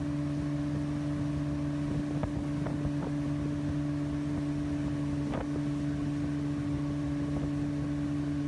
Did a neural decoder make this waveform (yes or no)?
no